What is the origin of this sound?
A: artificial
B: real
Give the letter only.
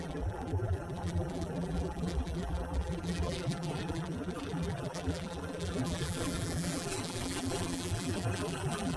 A